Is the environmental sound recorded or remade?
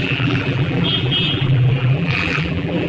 remade